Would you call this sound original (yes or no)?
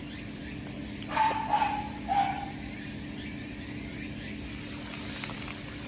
yes